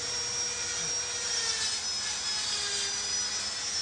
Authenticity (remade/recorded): recorded